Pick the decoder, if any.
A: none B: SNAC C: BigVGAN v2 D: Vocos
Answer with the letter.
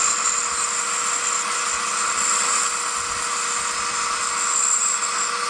A